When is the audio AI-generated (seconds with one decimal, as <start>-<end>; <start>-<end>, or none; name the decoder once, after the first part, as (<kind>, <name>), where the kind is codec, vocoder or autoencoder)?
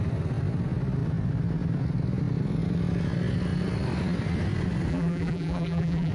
4.9-6.1 (vocoder, BigVGAN v2)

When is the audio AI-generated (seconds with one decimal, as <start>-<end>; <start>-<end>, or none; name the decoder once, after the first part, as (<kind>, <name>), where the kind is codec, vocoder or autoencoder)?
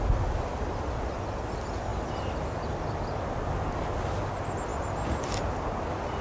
none